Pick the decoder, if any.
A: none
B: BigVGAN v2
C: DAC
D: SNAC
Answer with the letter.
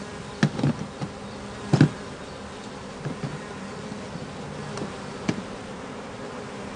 A